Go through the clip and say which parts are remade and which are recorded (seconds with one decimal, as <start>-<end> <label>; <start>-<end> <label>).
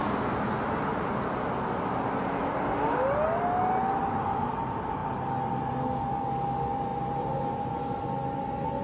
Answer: 0.0-6.9 recorded; 6.9-7.7 remade; 7.7-8.8 recorded